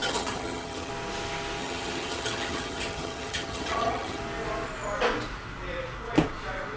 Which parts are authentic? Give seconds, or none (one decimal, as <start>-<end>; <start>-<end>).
0.9-1.6; 4.2-6.8